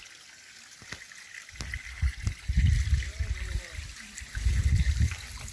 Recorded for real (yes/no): yes